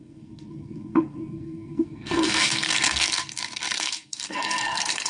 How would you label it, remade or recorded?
remade